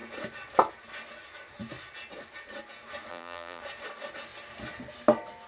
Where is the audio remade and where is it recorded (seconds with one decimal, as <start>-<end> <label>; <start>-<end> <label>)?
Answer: 0.0-3.1 recorded; 3.1-3.6 remade; 3.6-5.5 recorded